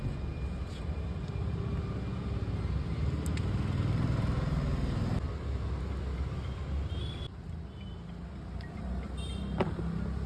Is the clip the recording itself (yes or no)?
yes